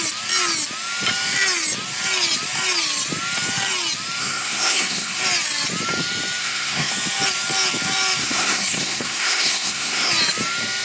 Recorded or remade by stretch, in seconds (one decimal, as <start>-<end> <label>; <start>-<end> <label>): 0.0-4.2 recorded; 4.2-5.2 remade; 5.2-6.4 recorded; 6.4-6.9 remade; 6.9-8.2 recorded; 8.2-10.1 remade; 10.1-10.8 recorded